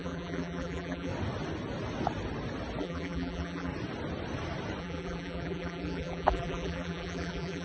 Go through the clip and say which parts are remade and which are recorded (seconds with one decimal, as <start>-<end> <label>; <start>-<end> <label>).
0.0-1.1 remade; 1.1-2.8 recorded; 2.8-3.7 remade; 3.7-4.8 recorded; 4.8-7.6 remade